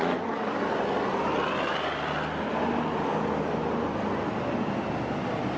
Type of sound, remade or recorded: recorded